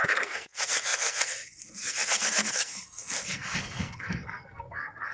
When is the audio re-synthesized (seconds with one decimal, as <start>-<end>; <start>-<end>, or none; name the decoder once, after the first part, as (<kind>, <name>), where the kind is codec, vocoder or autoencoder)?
0.0-5.1 (codec, SNAC)